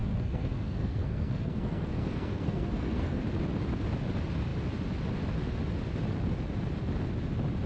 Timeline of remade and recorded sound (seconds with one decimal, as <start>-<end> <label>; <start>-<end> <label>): 0.0-3.2 remade; 3.2-7.7 recorded